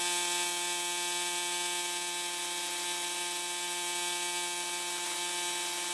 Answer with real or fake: real